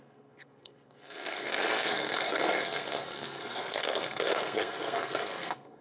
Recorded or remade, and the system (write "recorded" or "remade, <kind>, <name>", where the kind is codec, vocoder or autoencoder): remade, codec, SNAC